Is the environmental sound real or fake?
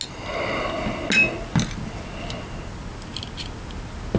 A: real